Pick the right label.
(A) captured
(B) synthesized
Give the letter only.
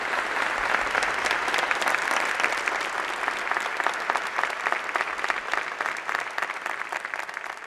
B